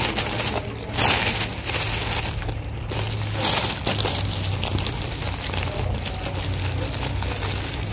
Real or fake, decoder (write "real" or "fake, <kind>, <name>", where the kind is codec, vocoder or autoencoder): real